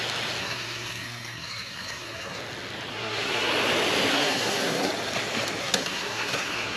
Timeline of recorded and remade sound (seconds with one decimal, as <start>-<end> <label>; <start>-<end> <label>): 0.0-0.4 recorded; 0.4-2.4 remade; 2.4-2.9 recorded; 2.9-3.5 remade; 3.5-4.1 recorded; 4.1-4.9 remade; 4.9-5.6 recorded; 5.6-6.8 remade